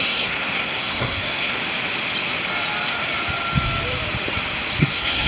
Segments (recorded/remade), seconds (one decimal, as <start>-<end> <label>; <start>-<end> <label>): 0.0-1.6 remade; 1.6-4.8 recorded; 4.8-5.3 remade